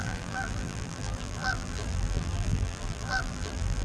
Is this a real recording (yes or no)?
no